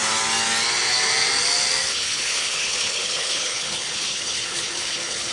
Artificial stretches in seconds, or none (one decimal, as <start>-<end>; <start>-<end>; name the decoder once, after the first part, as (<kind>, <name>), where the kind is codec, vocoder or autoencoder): 1.9-5.3 (codec, HILCodec)